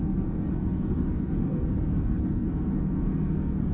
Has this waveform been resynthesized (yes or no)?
yes